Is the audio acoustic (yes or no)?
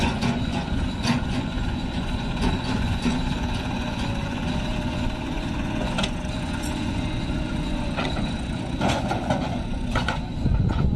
no